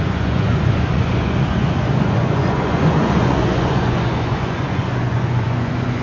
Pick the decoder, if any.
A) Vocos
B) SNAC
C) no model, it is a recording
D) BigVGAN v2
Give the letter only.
A